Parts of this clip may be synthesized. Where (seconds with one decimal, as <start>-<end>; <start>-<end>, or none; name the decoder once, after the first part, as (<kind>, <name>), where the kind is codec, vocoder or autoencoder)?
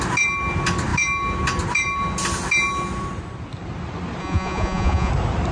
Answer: 4.2-5.1 (vocoder, Vocos)